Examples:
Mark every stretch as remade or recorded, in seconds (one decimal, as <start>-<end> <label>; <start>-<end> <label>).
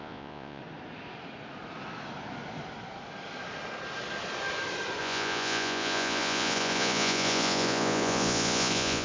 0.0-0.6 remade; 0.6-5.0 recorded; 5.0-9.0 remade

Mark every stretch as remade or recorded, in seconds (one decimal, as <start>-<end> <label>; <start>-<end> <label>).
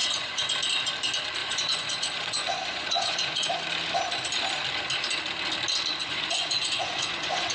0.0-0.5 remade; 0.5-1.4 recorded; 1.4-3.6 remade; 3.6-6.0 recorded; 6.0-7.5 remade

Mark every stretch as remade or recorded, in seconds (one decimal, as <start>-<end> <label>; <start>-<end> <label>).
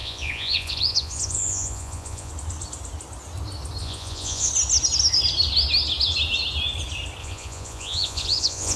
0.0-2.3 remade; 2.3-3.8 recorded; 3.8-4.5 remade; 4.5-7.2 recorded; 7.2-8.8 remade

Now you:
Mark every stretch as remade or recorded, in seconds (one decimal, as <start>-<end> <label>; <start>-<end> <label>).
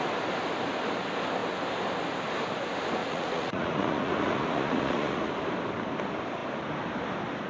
0.0-3.0 recorded; 3.0-5.3 remade; 5.3-7.5 recorded